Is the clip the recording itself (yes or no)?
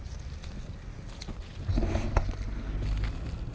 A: yes